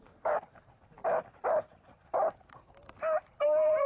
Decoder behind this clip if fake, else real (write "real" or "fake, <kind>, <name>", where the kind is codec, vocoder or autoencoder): fake, vocoder, BigVGAN v2